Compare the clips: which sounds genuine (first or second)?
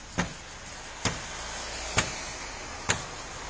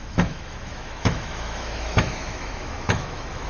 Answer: first